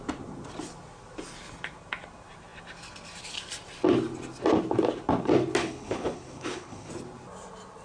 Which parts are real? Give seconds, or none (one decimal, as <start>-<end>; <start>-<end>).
0.0-5.6; 6.9-7.8